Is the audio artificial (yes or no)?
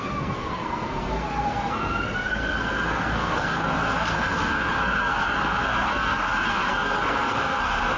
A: yes